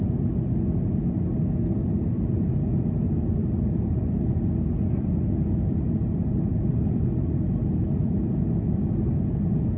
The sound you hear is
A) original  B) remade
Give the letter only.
A